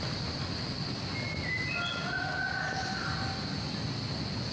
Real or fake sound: real